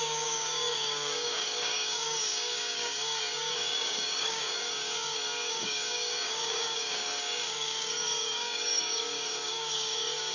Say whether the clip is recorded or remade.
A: remade